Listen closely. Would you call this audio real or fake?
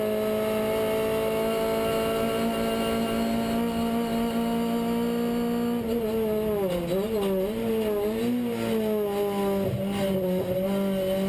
real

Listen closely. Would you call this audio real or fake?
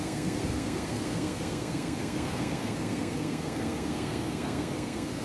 fake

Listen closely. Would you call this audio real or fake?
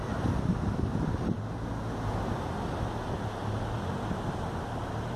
real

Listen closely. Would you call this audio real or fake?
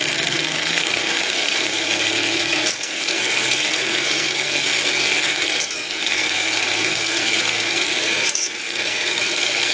fake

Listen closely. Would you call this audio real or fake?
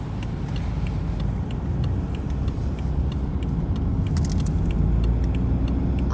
real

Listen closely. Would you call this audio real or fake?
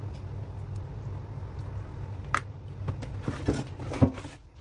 real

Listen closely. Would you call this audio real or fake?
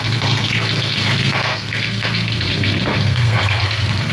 fake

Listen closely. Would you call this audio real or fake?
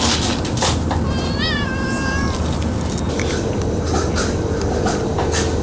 real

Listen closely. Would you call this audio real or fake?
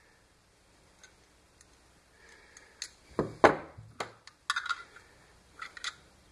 real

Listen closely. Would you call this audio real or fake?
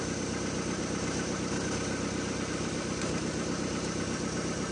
real